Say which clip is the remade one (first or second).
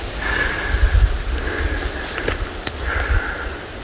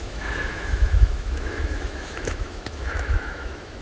second